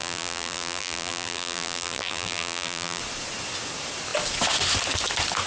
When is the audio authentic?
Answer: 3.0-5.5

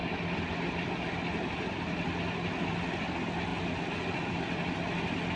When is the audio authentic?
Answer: 0.0-5.4

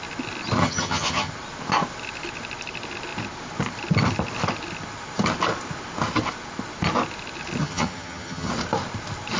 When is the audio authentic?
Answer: 0.0-0.6; 1.3-7.6; 8.5-9.4

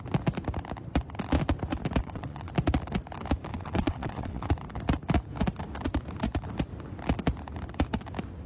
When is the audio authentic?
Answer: 0.0-2.0; 2.5-3.5; 4.5-8.5